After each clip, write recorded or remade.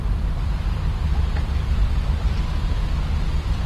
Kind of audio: recorded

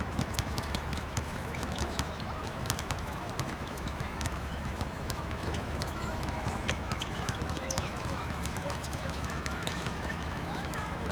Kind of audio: remade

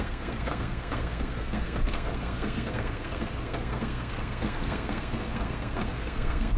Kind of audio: remade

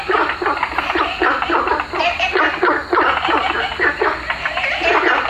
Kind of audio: recorded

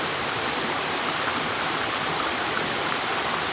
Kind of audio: remade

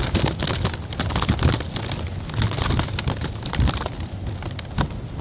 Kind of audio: recorded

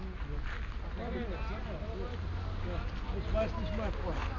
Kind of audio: recorded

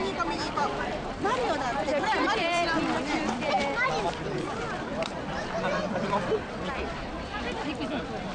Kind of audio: remade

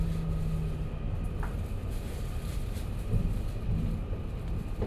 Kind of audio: recorded